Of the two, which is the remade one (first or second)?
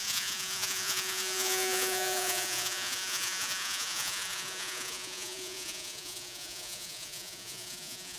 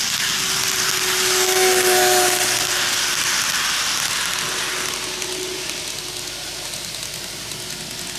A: first